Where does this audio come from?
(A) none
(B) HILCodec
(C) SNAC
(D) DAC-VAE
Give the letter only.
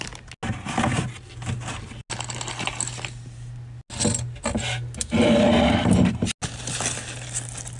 A